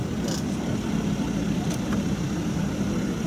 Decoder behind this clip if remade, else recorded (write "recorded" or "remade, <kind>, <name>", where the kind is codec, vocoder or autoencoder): recorded